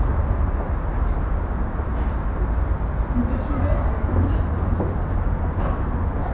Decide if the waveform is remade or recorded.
recorded